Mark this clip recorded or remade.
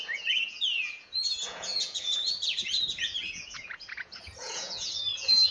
remade